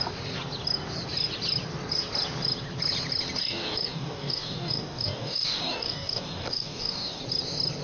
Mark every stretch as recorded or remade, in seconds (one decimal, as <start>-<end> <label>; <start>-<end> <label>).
0.0-3.4 recorded; 3.4-7.2 remade; 7.2-7.8 recorded